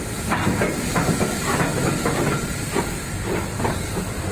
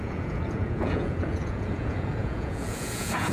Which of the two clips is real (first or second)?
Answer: first